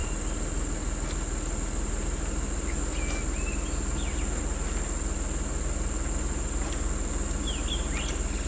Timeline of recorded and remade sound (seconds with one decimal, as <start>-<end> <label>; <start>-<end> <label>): 0.0-8.5 recorded

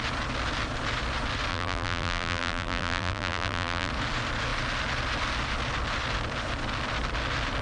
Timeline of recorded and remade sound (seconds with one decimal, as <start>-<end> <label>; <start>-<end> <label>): 0.0-1.5 recorded; 1.5-3.9 remade; 3.9-7.6 recorded